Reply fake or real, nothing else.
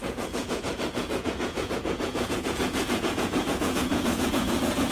fake